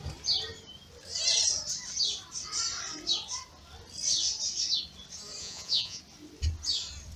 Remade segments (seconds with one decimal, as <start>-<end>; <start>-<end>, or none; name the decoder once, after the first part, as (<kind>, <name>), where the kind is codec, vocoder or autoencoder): 5.4-6.0 (vocoder, Vocos)